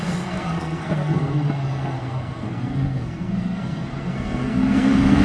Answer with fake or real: fake